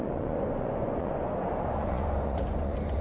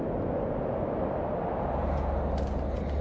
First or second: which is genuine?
second